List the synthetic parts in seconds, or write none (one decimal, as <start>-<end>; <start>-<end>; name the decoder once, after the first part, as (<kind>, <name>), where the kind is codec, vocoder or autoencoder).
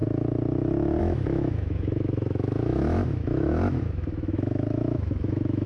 1.0-5.7 (autoencoder, DAC-VAE)